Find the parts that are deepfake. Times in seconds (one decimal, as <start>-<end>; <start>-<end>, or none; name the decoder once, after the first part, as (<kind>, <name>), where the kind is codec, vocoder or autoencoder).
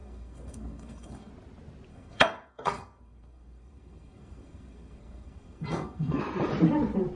0.0-1.3 (codec, SNAC); 1.9-6.2